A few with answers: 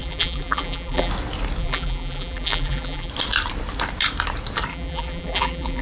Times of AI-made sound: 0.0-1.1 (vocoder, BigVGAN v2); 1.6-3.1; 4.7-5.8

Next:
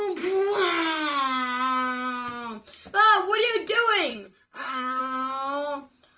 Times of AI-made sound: 4.1-5.0 (codec, SNAC)